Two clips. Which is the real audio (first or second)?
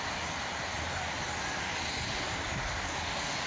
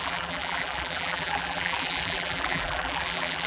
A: first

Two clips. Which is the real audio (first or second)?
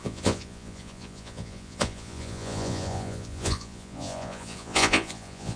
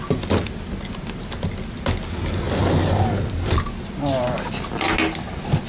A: second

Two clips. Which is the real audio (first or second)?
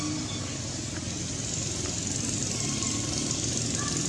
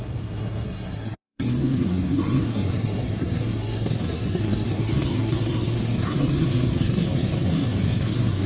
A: first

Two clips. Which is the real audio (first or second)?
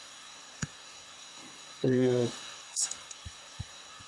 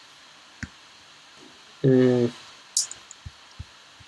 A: second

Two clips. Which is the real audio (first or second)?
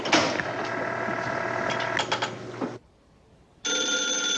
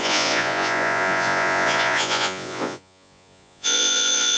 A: first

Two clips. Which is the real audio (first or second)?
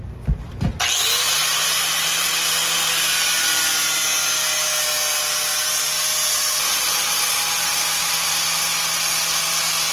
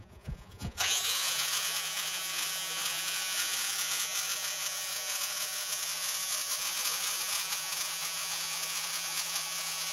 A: first